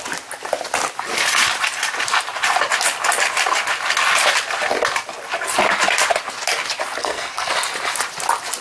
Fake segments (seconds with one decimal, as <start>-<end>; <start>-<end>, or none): 7.0-7.5